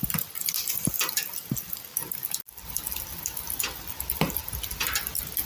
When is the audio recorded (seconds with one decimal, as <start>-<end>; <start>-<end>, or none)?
0.0-5.5